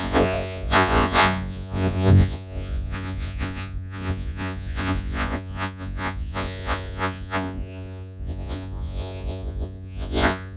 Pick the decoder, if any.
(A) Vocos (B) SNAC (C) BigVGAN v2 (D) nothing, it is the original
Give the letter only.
A